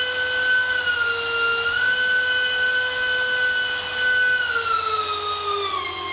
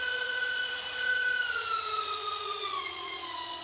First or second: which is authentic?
first